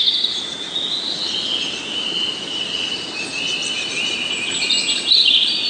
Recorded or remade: recorded